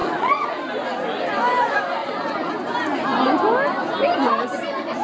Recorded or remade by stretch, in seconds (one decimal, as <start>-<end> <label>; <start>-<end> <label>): 0.0-0.6 remade; 0.6-2.0 recorded; 2.0-2.5 remade; 2.5-5.0 recorded